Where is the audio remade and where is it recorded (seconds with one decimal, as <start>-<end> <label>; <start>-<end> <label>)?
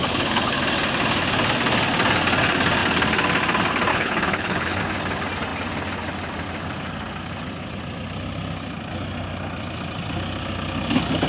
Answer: 0.0-0.6 remade; 0.6-3.9 recorded; 3.9-4.8 remade; 4.8-11.3 recorded